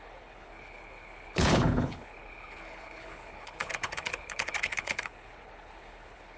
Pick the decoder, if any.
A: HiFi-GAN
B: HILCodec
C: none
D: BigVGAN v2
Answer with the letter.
B